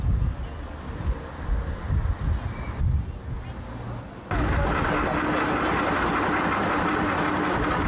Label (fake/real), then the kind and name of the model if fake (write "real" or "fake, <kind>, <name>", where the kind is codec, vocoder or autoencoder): real